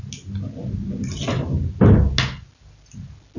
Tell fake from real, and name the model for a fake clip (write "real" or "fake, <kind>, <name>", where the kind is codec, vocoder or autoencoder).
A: real